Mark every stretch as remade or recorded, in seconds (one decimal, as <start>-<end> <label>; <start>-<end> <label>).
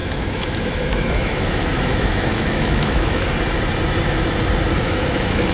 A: 0.0-3.3 remade; 3.3-4.7 recorded; 4.7-5.5 remade